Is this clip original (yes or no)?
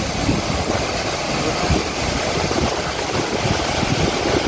yes